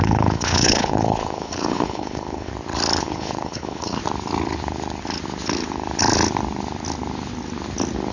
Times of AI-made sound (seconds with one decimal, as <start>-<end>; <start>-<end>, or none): 0.0-2.5; 3.0-4.0